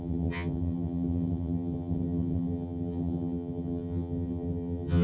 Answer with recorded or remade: remade